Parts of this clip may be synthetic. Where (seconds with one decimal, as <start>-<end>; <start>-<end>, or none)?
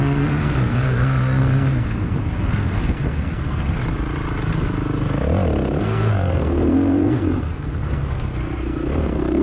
0.0-3.8; 5.8-9.4